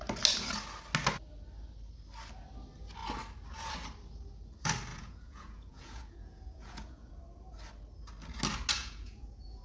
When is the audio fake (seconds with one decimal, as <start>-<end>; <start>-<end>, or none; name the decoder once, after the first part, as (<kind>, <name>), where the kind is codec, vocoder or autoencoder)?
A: 4.9-7.1 (vocoder, Vocos); 8.8-9.6